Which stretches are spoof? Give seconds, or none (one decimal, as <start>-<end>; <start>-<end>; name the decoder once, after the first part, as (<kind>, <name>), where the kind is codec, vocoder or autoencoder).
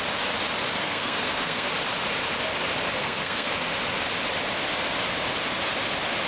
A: 0.8-1.7 (codec, SNAC); 3.0-3.5